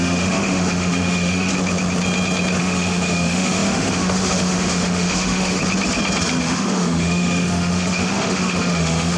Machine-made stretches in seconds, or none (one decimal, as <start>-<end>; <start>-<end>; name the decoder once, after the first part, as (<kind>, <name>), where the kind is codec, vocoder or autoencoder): 0.0-1.5 (autoencoder, DAC-VAE); 2.6-5.6; 6.4-9.2